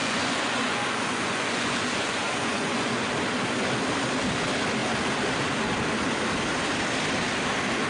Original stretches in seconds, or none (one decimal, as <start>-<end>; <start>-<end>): 3.1-7.9